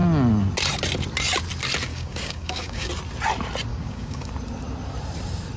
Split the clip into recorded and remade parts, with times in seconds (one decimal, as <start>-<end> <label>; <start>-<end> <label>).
0.0-1.9 recorded; 1.9-2.9 remade; 2.9-3.7 recorded; 3.7-4.3 remade; 4.3-5.6 recorded

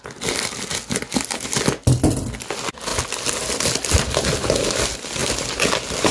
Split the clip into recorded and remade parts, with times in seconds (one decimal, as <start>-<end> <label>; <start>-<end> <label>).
0.0-6.1 recorded

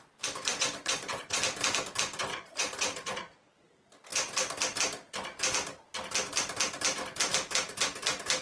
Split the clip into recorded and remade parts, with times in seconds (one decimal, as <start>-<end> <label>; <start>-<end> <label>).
0.0-0.5 recorded; 0.5-1.4 remade; 1.4-2.3 recorded; 2.3-3.5 remade; 3.5-8.4 recorded

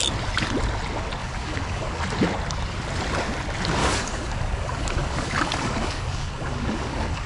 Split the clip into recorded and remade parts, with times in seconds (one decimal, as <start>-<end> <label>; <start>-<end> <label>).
0.0-1.2 recorded; 1.2-2.0 remade; 2.0-3.8 recorded; 3.8-7.3 remade